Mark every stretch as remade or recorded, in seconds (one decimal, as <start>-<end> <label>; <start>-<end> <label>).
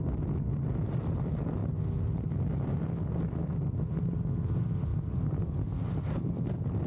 0.0-4.9 recorded; 4.9-5.4 remade; 5.4-6.9 recorded